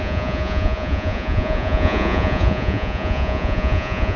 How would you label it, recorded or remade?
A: remade